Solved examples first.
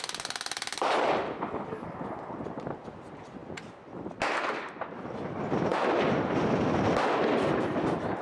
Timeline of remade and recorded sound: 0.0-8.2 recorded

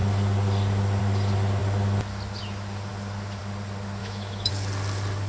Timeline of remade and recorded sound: 0.0-4.0 recorded; 4.0-4.5 remade; 4.5-5.3 recorded

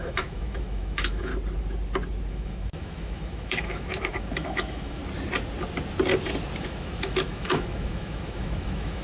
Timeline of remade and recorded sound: 0.0-1.3 remade; 1.3-2.3 recorded; 2.3-5.0 remade; 5.0-6.6 recorded; 6.6-9.0 remade

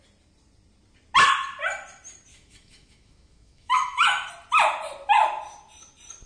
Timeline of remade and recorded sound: 0.0-2.3 recorded; 2.3-4.3 remade; 4.3-6.3 recorded